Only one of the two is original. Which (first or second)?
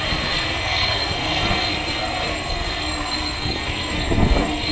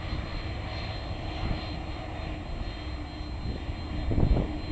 second